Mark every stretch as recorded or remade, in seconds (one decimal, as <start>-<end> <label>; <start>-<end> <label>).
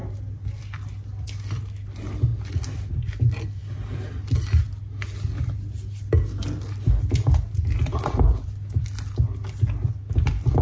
0.0-10.6 recorded